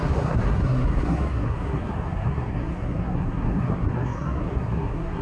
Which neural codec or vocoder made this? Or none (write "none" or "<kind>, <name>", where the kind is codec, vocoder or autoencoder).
codec, SNAC